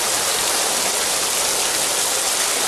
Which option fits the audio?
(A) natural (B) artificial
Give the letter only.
A